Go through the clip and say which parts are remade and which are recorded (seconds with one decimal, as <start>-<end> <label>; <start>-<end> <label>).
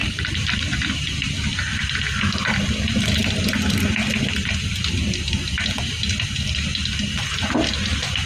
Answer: 0.0-1.6 remade; 1.6-8.3 recorded